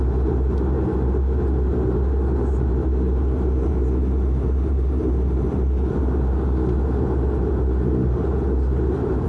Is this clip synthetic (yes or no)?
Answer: no